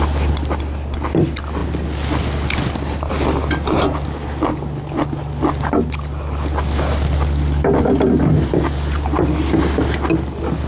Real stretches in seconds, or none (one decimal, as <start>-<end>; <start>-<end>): 0.0-10.7

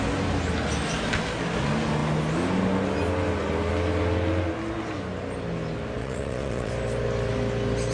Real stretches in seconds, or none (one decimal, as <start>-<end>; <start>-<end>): 0.0-6.0; 6.7-7.9

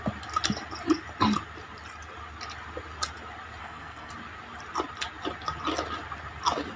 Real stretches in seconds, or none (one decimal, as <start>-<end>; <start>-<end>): 0.0-3.6; 4.1-6.8

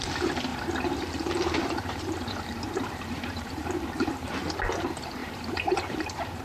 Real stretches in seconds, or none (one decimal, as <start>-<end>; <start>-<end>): 0.0-0.5; 4.3-5.2

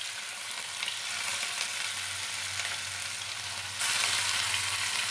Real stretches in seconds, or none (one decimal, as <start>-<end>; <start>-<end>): 0.0-5.1